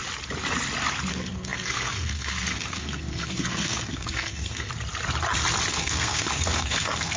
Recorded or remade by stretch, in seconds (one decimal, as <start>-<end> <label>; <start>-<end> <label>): 0.0-1.1 recorded; 1.1-4.7 remade; 4.7-5.7 recorded; 5.7-7.2 remade